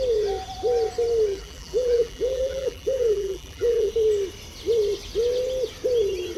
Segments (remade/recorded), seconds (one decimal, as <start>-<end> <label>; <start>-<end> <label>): 0.0-1.3 recorded; 1.3-3.9 remade; 3.9-6.4 recorded